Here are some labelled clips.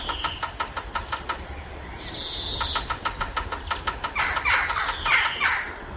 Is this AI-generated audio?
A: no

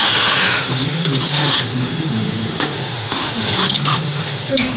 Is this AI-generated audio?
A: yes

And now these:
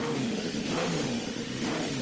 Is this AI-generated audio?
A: yes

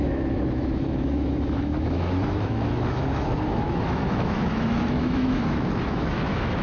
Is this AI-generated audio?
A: yes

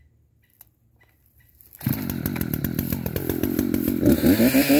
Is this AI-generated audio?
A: no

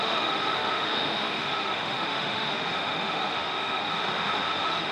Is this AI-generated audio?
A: yes